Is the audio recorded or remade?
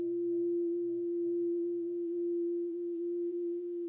remade